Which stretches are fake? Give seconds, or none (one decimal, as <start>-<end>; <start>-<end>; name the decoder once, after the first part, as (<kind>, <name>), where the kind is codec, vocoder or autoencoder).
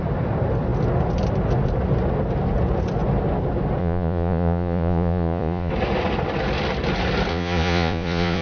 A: 3.8-5.7 (vocoder, Vocos); 7.3-8.4